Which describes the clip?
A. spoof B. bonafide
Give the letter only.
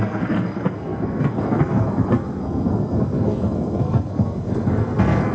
A